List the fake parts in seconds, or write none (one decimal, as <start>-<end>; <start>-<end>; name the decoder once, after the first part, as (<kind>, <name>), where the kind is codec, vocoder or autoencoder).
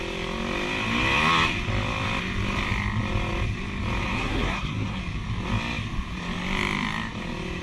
4.0-5.0 (codec, SNAC)